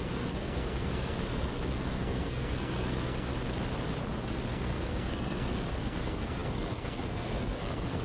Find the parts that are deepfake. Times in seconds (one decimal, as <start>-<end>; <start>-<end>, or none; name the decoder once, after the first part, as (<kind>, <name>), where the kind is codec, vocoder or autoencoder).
0.0-3.3 (codec, SNAC); 4.5-8.0